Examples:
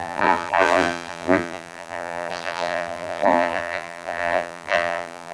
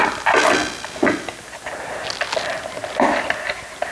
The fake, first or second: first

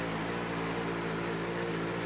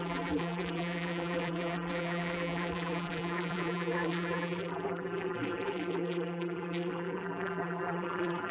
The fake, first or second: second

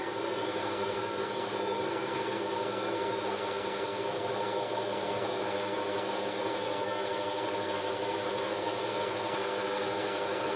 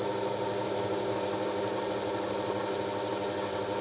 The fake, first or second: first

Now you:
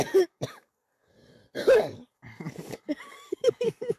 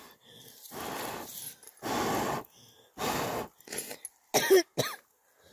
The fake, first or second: first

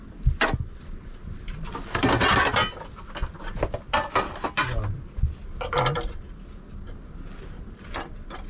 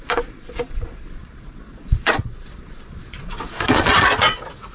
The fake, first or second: second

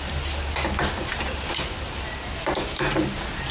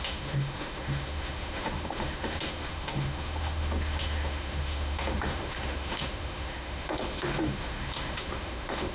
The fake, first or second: second